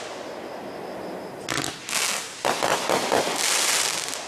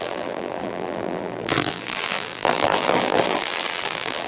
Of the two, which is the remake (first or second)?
second